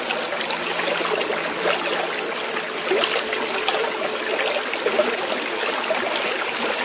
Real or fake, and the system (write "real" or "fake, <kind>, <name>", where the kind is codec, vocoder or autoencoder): real